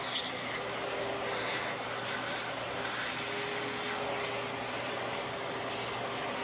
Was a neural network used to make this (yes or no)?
no